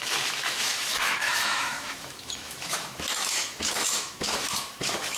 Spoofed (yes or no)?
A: yes